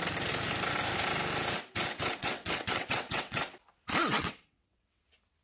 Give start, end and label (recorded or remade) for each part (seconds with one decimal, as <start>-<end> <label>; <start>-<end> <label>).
0.0-2.2 recorded; 2.2-3.4 remade; 3.4-4.0 recorded; 4.0-5.0 remade; 5.0-5.4 recorded